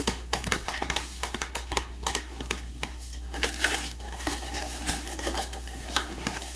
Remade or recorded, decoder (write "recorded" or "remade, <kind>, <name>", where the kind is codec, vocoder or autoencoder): remade, codec, SNAC